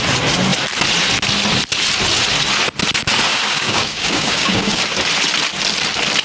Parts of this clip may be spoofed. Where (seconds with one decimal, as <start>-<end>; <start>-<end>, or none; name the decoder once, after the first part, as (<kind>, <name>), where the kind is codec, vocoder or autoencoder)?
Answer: 3.3-4.8 (codec, DAC)